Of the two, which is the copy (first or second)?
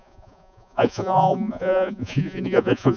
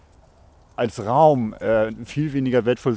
first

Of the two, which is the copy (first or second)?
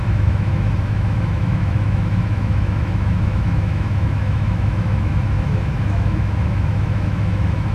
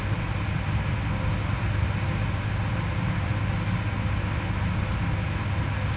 first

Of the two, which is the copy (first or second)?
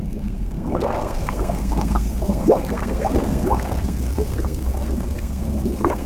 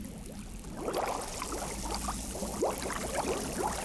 first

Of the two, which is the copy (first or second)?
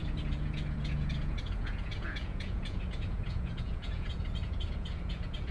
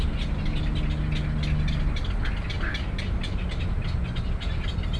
first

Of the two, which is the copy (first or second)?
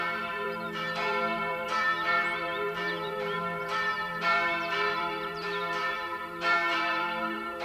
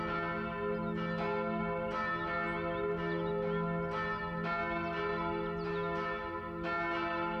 first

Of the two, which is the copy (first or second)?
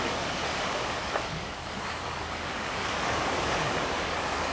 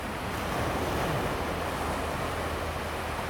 first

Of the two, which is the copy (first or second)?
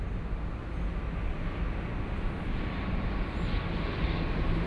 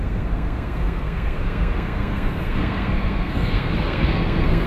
second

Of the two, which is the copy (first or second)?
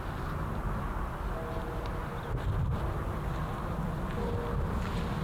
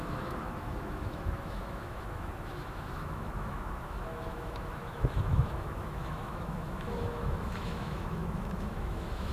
second